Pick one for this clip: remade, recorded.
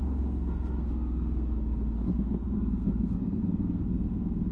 remade